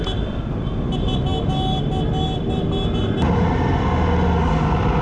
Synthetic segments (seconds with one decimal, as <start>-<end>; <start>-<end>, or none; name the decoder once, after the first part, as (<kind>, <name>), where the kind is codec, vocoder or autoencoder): 3.0-3.8 (vocoder, BigVGAN v2)